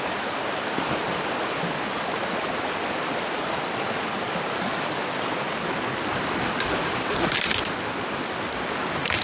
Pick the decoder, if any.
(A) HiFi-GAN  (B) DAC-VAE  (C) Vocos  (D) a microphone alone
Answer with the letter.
D